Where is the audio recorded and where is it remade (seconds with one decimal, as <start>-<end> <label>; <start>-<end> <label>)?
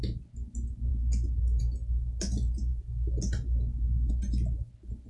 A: 0.0-5.1 recorded